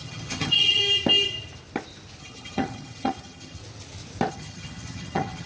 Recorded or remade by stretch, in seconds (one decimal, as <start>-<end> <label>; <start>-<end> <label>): 0.0-0.8 remade; 0.8-2.2 recorded; 2.2-3.6 remade; 3.6-4.3 recorded; 4.3-5.5 remade